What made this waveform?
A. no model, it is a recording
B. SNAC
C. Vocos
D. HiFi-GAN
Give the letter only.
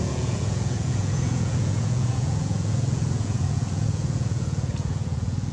C